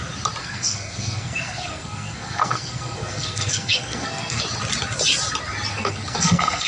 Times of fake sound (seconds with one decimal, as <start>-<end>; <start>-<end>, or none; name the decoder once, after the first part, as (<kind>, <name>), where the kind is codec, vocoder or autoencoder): 0.4-4.4 (codec, SNAC); 5.7-6.7